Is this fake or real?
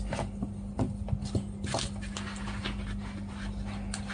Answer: real